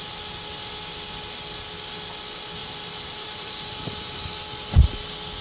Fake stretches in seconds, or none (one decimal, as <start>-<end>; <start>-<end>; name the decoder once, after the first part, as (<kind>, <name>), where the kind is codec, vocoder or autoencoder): 2.6-4.4 (vocoder, BigVGAN v2)